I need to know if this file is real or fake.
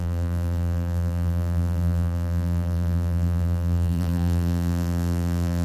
fake